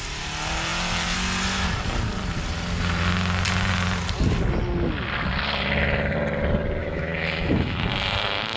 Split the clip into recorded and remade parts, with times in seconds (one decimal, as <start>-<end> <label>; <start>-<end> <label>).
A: 0.0-6.8 recorded; 6.8-7.8 remade; 7.8-8.6 recorded